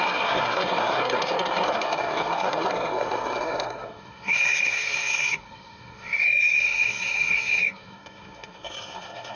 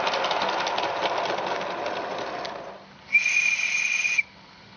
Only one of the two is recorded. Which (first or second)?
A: second